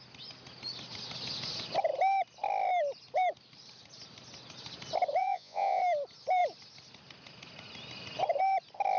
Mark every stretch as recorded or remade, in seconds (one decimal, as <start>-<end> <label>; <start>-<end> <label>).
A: 0.0-5.2 recorded; 5.2-5.8 remade; 5.8-9.0 recorded